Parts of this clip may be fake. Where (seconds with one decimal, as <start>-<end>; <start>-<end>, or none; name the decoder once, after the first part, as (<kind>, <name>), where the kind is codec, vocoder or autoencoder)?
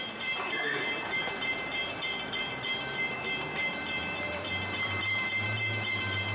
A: 0.0-6.3 (vocoder, BigVGAN v2)